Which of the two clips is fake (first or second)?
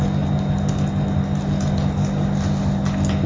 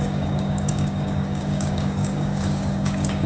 second